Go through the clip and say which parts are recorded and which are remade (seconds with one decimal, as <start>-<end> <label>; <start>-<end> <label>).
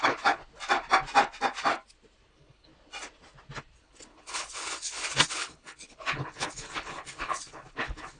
0.0-0.4 remade; 0.4-2.3 recorded; 2.3-2.7 remade; 2.7-3.8 recorded; 3.8-8.2 remade